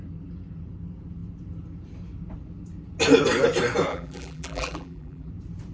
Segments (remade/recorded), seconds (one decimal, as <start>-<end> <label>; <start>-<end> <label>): 0.0-3.9 recorded; 3.9-5.3 remade; 5.3-5.7 recorded